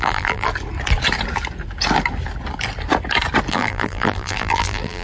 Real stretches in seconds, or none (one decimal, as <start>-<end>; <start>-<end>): 0.5-3.5